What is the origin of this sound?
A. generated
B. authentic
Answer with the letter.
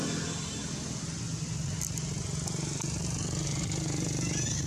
B